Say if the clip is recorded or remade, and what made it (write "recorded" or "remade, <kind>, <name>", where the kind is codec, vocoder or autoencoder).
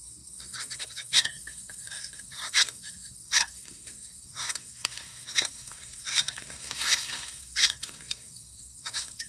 remade, codec, SNAC